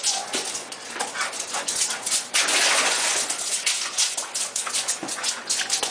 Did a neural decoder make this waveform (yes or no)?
yes